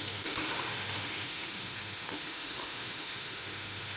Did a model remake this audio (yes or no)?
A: yes